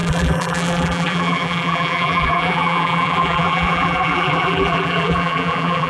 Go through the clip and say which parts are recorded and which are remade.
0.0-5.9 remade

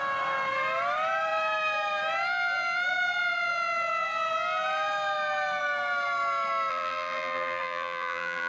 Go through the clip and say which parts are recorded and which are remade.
0.0-6.7 recorded; 6.7-8.5 remade